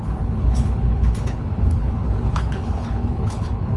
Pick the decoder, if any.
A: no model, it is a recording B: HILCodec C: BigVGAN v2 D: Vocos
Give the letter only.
B